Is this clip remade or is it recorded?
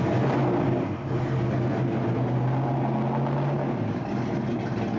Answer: recorded